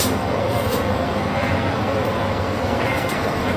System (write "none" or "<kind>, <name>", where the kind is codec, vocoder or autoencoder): codec, SNAC